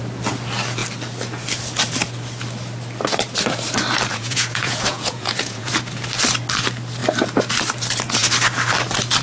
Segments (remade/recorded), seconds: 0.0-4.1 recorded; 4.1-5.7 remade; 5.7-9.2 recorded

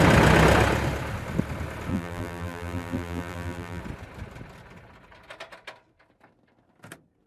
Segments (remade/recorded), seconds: 0.0-1.9 recorded; 1.9-3.8 remade; 3.8-7.3 recorded

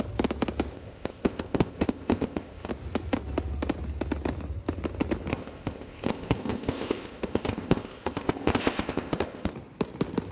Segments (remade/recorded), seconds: 0.0-0.7 recorded; 0.7-2.7 remade; 2.7-5.3 recorded; 5.3-9.5 remade; 9.5-10.3 recorded

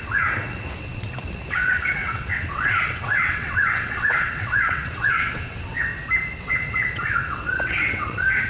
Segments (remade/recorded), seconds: 0.0-5.9 remade; 5.9-6.4 recorded; 6.4-8.5 remade